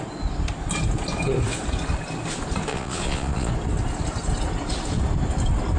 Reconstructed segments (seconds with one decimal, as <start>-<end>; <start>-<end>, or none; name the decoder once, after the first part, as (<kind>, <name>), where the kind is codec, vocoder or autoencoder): 2.7-3.5 (vocoder, Vocos)